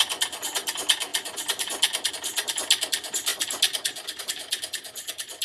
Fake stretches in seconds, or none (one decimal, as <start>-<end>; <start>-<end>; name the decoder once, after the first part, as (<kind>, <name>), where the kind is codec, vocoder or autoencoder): none